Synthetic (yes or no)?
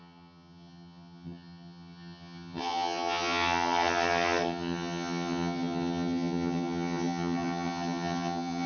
yes